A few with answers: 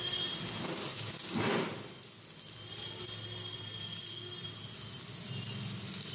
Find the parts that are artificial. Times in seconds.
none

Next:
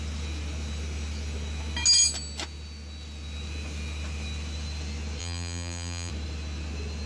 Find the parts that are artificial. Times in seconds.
5.2-6.1 (vocoder, BigVGAN v2)

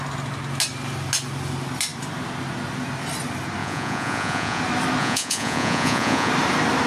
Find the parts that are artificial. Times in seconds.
3.6-4.6 (vocoder, Vocos); 5.0-6.3

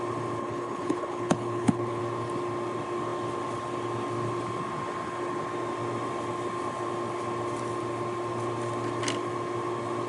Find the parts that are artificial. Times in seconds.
0.4-2.0 (codec, HILCodec)

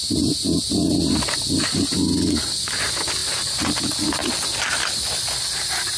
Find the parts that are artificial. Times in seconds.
none